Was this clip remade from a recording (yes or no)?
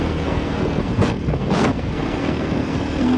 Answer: yes